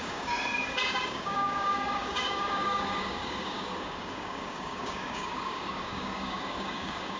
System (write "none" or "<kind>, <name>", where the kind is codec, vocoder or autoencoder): codec, DAC